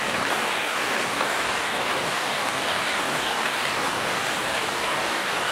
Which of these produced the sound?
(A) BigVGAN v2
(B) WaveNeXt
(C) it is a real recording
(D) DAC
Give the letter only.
D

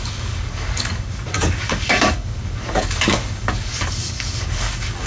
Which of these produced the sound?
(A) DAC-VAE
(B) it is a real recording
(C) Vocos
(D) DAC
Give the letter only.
D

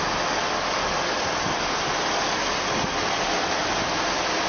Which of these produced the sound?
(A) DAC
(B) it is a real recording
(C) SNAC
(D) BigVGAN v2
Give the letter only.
B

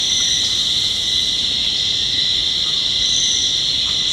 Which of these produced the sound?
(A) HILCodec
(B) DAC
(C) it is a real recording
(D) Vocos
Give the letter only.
C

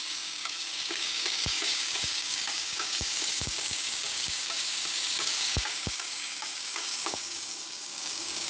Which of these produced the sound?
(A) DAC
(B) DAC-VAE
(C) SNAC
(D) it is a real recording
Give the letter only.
A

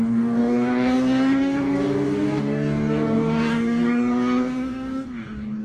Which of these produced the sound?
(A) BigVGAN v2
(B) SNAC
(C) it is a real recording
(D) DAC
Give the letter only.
D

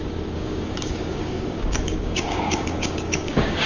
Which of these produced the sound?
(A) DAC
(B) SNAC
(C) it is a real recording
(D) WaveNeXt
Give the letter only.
A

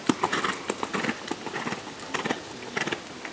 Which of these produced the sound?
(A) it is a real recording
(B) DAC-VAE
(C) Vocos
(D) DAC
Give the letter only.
A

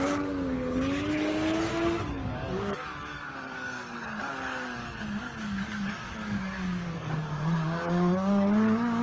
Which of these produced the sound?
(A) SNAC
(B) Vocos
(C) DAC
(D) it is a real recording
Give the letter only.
C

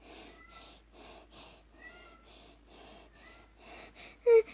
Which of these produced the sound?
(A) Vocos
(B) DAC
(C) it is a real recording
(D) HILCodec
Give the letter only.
C